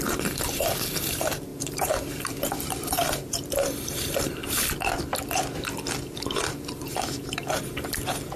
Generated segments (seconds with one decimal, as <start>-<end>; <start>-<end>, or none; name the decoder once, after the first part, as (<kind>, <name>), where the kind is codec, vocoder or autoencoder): 0.0-4.4 (vocoder, BigVGAN v2); 6.3-8.4